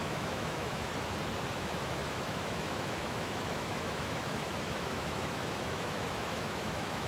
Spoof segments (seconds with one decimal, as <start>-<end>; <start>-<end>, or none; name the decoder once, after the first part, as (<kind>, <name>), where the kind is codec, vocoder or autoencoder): 0.0-0.9 (autoencoder, DAC-VAE); 1.5-7.1